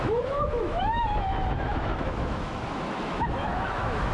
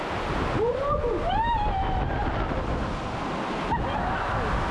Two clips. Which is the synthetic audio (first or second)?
first